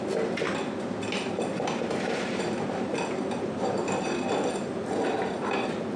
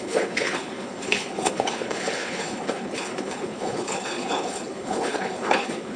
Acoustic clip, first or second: first